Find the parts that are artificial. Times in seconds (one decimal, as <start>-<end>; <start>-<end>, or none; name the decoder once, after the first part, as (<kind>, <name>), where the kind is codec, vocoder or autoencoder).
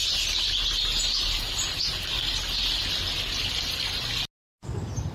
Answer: none